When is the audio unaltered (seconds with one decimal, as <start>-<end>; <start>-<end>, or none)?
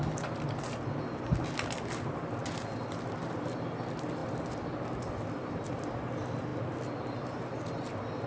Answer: 0.0-8.3